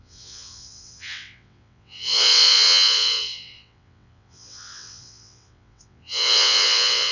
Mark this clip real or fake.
fake